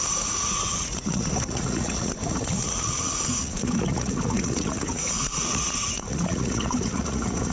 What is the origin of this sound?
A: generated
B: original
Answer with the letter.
A